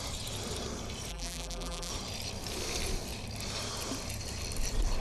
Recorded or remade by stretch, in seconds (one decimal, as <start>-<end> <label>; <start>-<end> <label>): 0.0-1.1 recorded; 1.1-1.9 remade; 1.9-5.0 recorded